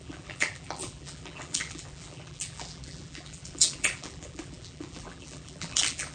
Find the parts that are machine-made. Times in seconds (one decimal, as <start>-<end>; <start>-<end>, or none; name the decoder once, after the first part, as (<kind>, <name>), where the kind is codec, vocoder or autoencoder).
0.0-6.1 (vocoder, BigVGAN v2)

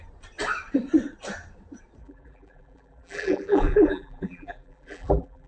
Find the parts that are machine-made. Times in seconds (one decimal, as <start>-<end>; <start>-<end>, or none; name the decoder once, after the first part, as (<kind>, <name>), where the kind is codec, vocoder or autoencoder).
2.0-5.5 (vocoder, BigVGAN v2)